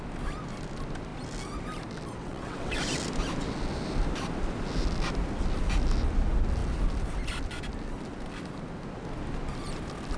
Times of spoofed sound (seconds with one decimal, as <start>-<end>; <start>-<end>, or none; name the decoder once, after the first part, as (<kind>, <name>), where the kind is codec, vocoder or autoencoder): 2.2-2.8 (vocoder, WaveNeXt)